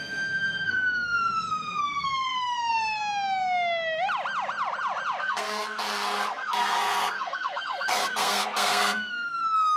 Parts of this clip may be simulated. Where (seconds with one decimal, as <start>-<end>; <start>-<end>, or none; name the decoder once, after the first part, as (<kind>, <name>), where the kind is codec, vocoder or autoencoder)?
0.0-3.0 (codec, SNAC); 5.2-9.8